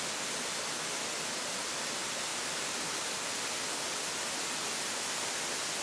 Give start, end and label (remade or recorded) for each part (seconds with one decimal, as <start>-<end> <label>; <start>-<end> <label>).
0.0-2.3 recorded; 2.3-2.9 remade; 2.9-5.8 recorded